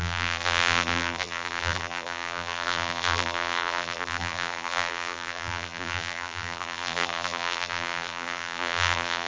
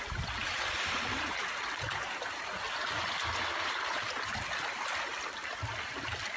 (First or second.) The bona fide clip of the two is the second